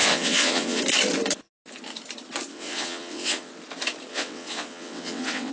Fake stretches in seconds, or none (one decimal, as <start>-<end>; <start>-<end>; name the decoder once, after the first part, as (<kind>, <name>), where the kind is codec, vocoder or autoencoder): 0.0-0.8 (vocoder, WaveNeXt); 2.5-3.5; 4.1-5.5